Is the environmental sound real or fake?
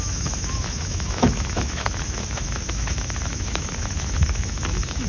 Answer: fake